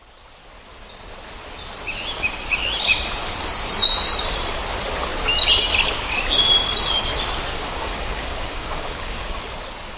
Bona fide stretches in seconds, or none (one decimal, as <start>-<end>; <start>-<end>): 0.0-7.5; 9.4-10.0